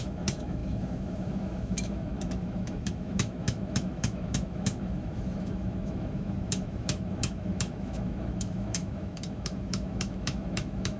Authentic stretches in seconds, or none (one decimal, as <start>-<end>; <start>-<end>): none